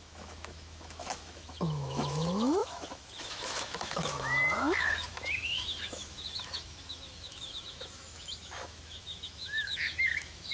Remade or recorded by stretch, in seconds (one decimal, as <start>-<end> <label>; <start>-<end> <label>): 0.0-10.5 remade